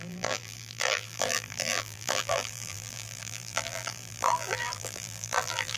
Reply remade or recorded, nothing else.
remade